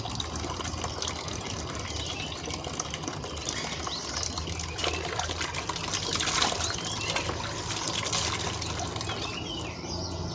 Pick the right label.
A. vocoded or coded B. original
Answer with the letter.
B